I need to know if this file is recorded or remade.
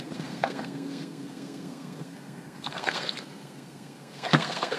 remade